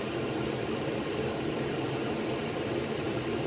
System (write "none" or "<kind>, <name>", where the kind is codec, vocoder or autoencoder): vocoder, BigVGAN v2